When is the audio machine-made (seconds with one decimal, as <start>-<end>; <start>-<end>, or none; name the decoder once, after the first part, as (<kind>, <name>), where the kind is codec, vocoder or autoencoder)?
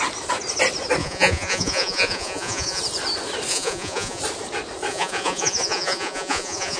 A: 1.0-2.8 (vocoder, Vocos); 3.5-4.2; 4.9-6.8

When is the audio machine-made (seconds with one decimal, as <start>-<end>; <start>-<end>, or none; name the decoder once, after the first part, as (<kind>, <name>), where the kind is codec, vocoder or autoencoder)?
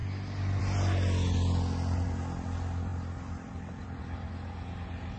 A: none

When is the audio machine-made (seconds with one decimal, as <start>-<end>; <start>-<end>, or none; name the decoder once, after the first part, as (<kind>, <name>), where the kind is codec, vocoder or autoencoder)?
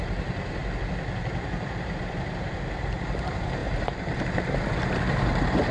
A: 0.0-0.6 (vocoder, BigVGAN v2); 1.1-5.7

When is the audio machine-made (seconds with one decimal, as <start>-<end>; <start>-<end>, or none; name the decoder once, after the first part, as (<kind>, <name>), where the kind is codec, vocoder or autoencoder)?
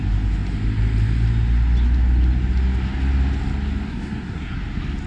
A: 3.9-4.6 (codec, SNAC)